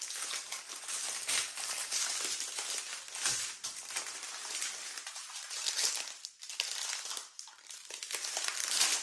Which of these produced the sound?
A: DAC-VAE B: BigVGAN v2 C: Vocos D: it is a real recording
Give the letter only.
D